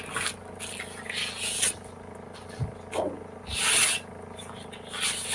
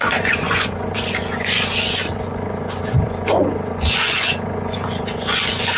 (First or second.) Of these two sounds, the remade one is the second